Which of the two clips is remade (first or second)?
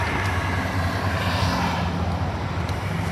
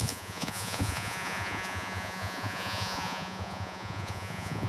second